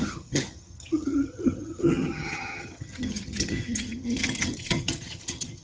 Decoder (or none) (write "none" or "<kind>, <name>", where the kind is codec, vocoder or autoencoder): vocoder, HiFi-GAN